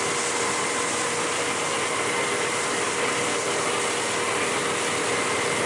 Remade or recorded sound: remade